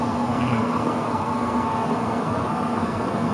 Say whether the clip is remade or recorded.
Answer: remade